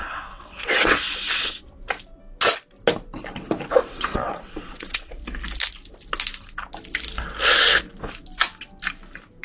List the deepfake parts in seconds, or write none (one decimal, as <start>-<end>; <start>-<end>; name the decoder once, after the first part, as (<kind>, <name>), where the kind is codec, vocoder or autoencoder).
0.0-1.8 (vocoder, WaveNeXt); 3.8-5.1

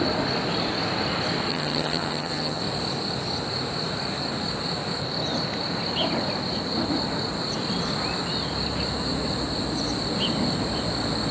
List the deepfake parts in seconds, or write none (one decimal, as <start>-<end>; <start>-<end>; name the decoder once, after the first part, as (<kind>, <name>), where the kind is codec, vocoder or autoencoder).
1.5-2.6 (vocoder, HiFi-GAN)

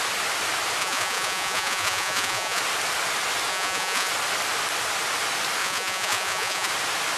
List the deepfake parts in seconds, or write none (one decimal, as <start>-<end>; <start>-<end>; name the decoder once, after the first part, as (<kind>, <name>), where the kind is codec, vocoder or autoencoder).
0.8-2.6 (vocoder, Vocos); 3.5-4.1; 5.6-6.7